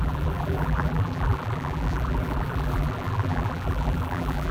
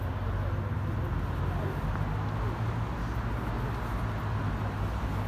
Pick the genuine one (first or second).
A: second